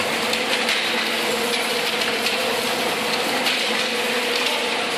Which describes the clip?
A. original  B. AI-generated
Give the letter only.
B